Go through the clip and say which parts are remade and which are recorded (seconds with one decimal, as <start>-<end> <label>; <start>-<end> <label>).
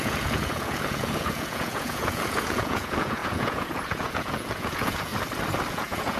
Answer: 0.0-5.1 remade; 5.1-5.7 recorded; 5.7-6.2 remade